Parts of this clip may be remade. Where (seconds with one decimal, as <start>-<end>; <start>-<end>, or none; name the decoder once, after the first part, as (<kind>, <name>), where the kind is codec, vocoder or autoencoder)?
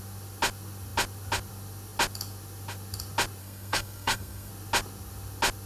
3.4-4.5 (codec, SNAC)